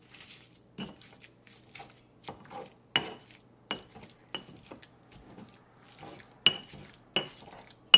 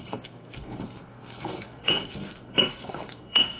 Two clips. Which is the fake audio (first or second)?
second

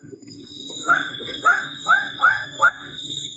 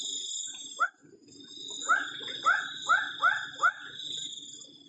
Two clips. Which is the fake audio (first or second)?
first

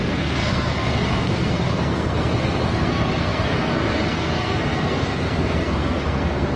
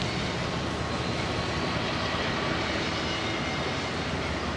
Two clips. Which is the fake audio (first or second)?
first